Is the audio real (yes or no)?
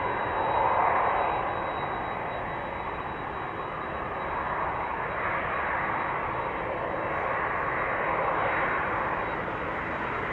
yes